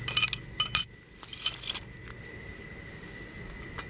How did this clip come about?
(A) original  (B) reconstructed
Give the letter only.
A